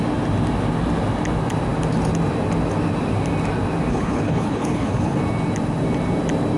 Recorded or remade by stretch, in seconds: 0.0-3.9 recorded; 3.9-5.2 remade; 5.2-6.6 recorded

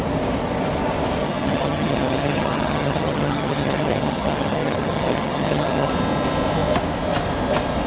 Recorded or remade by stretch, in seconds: 0.0-1.2 recorded; 1.2-5.9 remade; 5.9-7.9 recorded

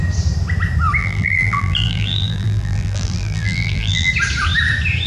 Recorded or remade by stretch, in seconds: 0.0-1.0 recorded; 1.0-4.1 remade; 4.1-5.1 recorded

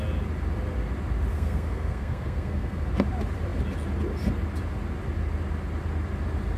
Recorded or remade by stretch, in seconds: 0.0-1.3 recorded; 1.3-2.9 remade; 2.9-6.6 recorded